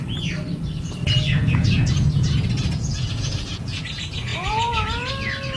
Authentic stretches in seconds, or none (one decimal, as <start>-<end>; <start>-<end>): 0.0-1.0; 3.8-4.3; 5.1-5.6